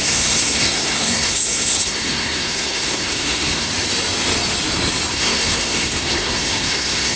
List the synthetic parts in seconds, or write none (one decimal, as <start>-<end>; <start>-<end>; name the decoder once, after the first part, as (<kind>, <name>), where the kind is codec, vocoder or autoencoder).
0.0-3.7 (codec, SNAC); 5.1-7.2